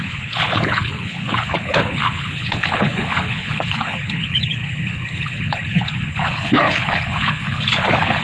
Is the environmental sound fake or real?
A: fake